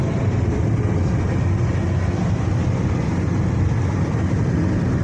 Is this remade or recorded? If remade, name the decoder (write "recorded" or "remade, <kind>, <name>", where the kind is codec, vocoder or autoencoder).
recorded